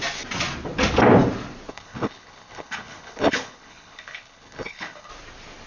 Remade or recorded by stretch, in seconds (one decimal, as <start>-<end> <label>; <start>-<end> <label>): 0.0-1.7 recorded; 1.7-5.1 remade; 5.1-5.7 recorded